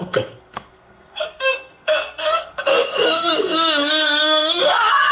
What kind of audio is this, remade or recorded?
remade